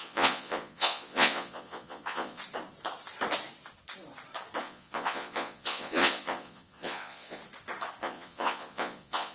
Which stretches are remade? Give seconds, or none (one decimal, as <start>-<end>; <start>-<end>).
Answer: 0.0-2.4; 4.6-7.4; 8.0-9.3